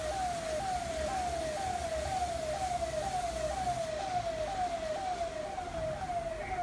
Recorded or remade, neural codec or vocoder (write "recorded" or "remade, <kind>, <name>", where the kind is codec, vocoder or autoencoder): recorded